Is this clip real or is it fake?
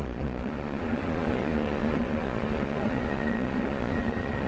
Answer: fake